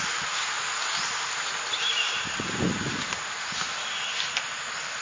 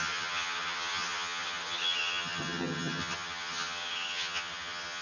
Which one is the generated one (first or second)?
second